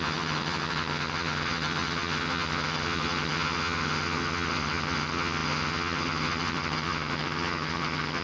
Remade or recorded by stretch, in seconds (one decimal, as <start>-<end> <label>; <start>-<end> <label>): 0.0-8.2 remade